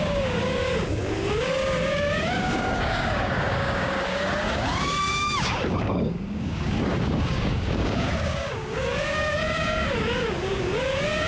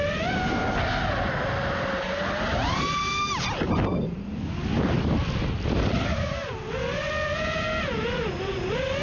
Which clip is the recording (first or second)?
second